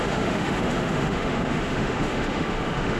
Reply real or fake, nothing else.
fake